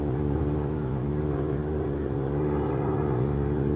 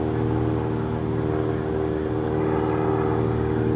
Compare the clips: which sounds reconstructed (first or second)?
first